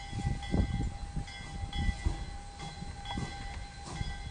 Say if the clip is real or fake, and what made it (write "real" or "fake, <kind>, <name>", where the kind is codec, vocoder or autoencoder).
real